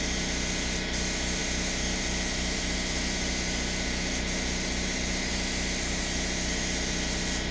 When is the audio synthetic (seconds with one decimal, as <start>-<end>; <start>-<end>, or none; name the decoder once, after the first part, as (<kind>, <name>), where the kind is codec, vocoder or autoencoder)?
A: none